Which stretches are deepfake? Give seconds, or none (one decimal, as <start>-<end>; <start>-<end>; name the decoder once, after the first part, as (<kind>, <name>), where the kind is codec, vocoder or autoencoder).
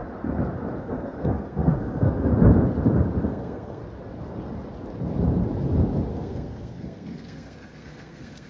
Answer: 0.8-2.3 (codec, SNAC); 3.2-3.8; 6.1-8.5